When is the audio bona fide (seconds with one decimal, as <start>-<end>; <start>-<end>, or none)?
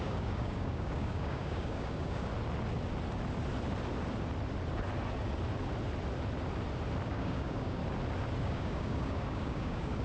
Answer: 2.3-7.1; 7.8-8.4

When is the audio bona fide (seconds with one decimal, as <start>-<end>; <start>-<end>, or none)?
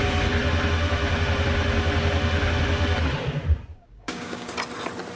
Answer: 0.0-3.7; 4.5-5.2